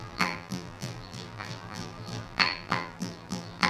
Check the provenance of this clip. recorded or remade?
remade